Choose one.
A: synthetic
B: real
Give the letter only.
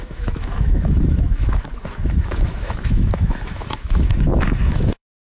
A